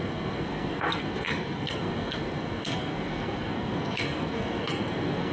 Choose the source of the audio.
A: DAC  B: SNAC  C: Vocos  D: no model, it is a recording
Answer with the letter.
B